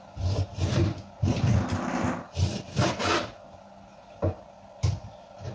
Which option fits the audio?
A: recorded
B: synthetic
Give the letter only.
A